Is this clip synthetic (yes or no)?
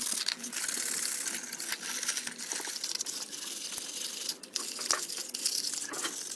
no